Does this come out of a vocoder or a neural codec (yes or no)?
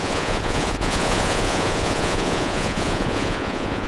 yes